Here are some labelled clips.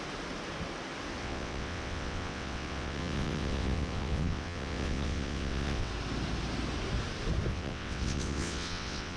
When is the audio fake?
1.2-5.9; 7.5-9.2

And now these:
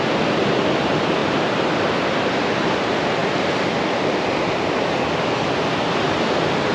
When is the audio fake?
none

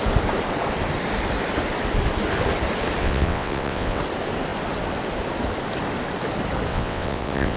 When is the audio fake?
3.0-4.0; 6.7-7.6

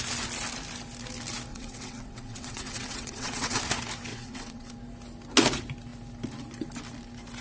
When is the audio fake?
1.5-3.6; 4.1-4.7

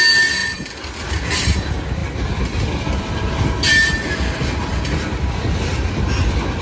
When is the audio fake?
none

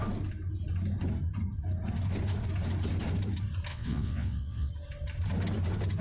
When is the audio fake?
3.7-4.7